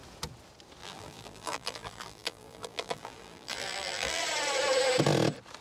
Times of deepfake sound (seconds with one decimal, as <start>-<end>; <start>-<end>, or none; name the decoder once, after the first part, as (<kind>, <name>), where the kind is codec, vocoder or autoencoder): 0.8-4.2 (vocoder, BigVGAN v2)